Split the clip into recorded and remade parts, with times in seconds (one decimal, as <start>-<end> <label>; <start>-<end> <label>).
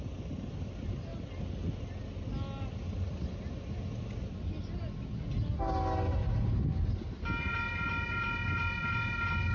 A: 0.0-9.5 recorded